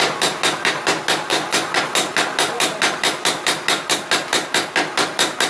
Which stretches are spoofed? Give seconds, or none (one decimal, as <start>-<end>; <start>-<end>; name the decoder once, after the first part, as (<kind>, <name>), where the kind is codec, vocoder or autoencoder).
1.3-1.8 (vocoder, Vocos)